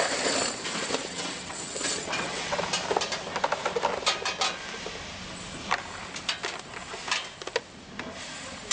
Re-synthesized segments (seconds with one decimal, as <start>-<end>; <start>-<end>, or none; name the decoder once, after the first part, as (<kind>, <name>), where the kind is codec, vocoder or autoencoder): 1.1-2.6 (vocoder, WaveNeXt)